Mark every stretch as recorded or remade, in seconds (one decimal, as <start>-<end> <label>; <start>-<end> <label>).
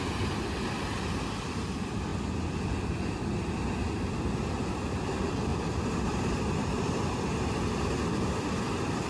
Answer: 0.0-9.1 recorded